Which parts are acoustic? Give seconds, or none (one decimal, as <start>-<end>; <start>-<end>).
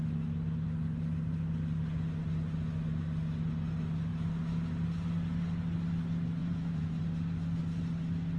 0.0-6.4; 7.0-8.4